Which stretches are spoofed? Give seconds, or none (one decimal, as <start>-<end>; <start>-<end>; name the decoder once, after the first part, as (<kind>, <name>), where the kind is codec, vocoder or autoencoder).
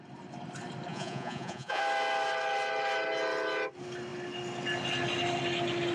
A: 0.9-1.8 (vocoder, Vocos)